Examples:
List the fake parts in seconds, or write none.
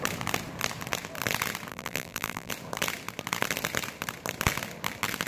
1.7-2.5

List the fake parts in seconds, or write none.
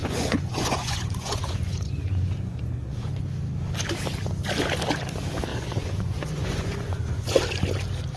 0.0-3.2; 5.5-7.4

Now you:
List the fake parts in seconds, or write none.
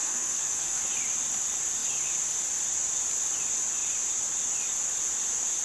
0.0-0.8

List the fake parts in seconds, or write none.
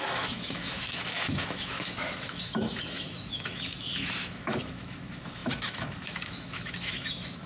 0.0-7.5